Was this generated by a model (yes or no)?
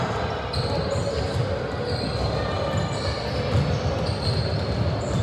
no